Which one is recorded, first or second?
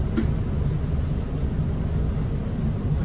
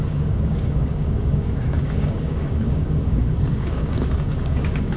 first